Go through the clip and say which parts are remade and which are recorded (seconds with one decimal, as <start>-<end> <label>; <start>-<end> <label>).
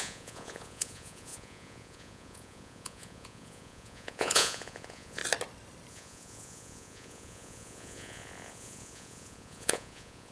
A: 0.0-5.2 remade; 5.2-5.9 recorded; 5.9-10.3 remade